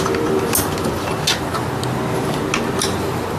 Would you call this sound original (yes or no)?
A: yes